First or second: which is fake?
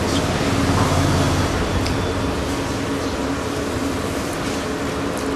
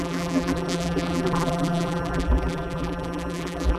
second